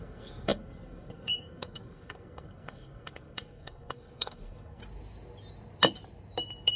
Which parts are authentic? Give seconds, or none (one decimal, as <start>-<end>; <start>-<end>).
4.8-6.8